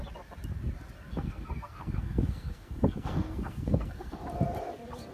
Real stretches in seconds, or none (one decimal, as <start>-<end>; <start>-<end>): 0.0-1.1; 4.2-5.1